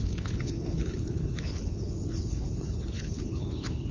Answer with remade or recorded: remade